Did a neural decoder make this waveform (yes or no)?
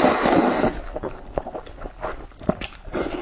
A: no